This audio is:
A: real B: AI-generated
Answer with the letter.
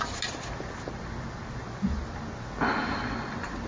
A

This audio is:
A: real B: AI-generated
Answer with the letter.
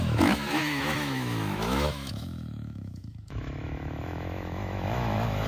B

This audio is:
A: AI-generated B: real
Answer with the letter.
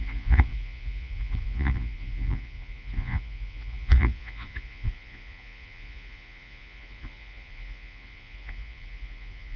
A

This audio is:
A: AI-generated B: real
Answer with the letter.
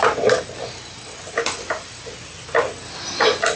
B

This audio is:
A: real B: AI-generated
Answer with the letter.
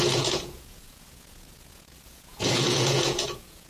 B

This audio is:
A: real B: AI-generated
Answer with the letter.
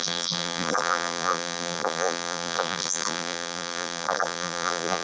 B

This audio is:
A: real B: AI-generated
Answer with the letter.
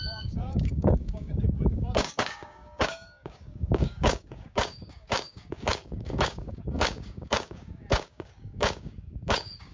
B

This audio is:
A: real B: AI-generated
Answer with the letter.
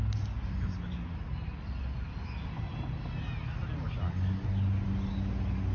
A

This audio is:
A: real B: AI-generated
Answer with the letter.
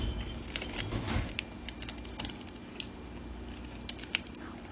A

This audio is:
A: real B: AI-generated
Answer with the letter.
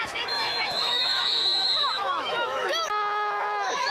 B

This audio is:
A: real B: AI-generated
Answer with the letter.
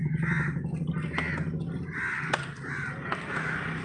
A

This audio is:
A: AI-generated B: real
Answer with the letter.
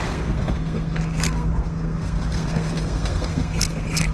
A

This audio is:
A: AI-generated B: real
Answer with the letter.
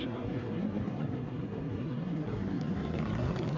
A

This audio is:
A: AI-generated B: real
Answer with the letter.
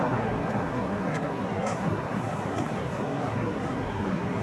A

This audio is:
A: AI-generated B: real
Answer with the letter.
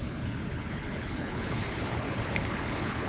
A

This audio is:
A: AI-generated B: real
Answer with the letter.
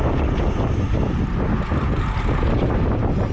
B